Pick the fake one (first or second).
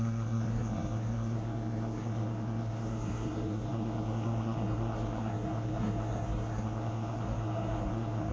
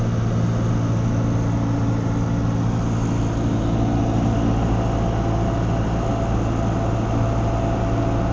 first